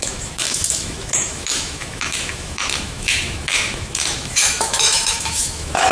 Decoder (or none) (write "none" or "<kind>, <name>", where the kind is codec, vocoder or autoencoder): autoencoder, DAC-VAE